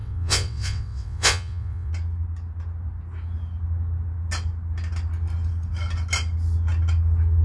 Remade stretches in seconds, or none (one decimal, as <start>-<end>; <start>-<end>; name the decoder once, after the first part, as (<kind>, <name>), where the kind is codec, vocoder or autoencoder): 0.0-1.9 (vocoder, WaveNeXt)